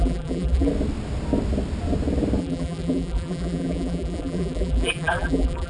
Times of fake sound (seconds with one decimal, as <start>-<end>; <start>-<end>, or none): 0.0-0.7; 2.4-5.7